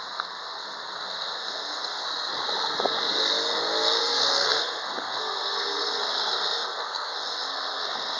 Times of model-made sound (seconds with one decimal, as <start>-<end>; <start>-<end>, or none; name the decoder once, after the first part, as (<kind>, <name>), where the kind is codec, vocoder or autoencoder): 0.0-2.0 (codec, SNAC); 4.0-8.2